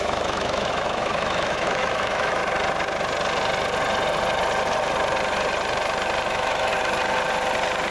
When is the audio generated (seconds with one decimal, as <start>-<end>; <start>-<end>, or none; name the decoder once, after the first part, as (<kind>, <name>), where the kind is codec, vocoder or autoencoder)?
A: 0.0-2.4 (autoencoder, DAC-VAE); 6.3-6.7